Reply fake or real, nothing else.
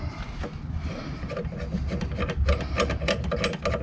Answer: real